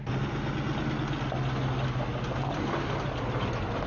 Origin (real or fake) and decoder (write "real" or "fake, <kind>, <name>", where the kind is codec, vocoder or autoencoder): real